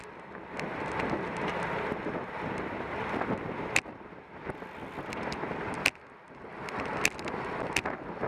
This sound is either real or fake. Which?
real